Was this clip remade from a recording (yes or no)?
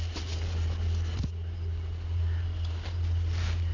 no